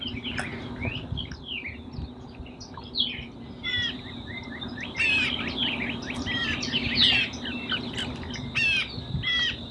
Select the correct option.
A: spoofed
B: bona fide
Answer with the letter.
B